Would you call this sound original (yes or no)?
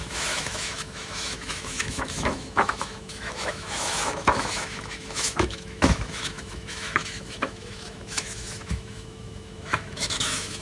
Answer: no